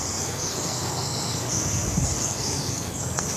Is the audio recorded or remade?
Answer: remade